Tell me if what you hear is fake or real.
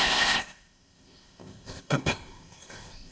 fake